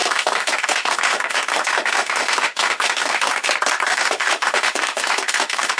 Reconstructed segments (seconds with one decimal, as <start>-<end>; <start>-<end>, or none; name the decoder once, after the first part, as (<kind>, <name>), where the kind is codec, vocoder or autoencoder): 0.0-3.5 (autoencoder, DAC-VAE); 3.9-5.8